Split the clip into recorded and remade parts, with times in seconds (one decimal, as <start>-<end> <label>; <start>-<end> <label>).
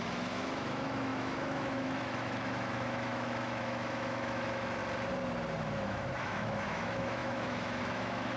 0.0-4.8 remade; 4.8-5.6 recorded; 5.6-8.4 remade